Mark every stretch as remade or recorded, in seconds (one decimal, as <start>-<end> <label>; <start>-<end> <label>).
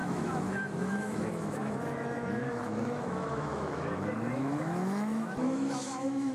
0.0-6.3 remade